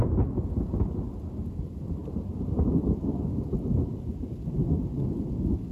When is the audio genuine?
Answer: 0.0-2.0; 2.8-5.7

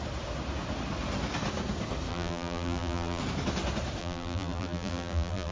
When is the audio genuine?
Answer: 0.0-2.1; 3.2-4.0

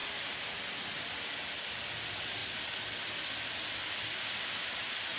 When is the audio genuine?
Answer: 0.0-5.2

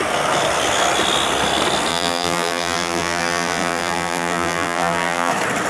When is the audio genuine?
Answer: 0.0-1.9; 5.3-5.7

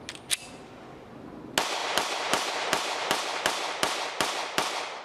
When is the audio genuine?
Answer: 0.0-1.8